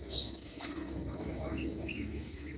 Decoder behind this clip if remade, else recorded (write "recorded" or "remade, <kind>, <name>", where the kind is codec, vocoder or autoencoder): remade, codec, SNAC